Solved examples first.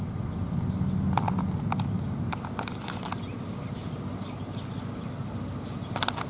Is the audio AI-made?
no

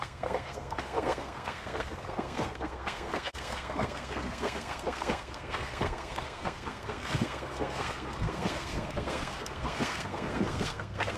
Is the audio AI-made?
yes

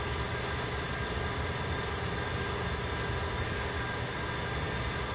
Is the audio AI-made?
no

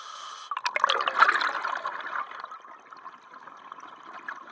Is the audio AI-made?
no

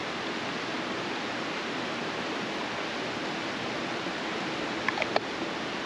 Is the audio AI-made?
no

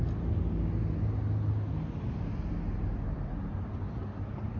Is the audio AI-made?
no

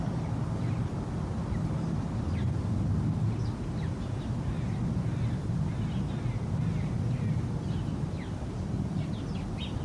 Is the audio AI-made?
no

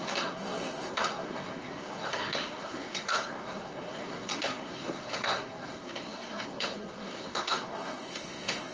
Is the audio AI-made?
yes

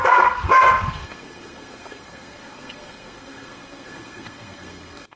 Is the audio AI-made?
yes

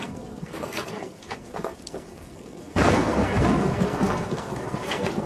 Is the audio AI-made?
yes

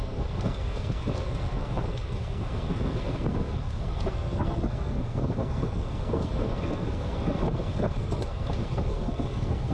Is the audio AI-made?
yes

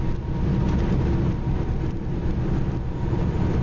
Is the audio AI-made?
no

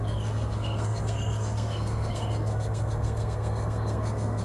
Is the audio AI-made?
yes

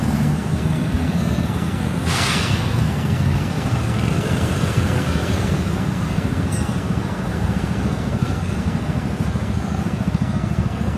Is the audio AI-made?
yes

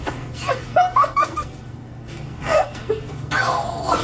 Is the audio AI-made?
yes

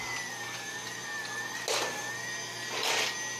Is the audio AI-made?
no